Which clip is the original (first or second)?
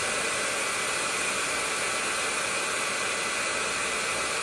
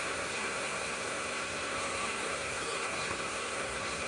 first